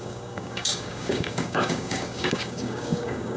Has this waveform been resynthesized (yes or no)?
yes